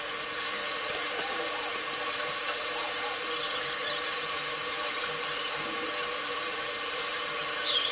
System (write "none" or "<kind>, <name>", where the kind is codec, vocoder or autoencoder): vocoder, BigVGAN v2